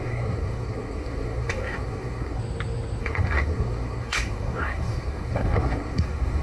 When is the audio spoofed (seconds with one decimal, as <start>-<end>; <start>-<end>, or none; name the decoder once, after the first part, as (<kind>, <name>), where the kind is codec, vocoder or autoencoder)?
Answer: 0.0-2.4 (codec, SNAC); 3.0-6.4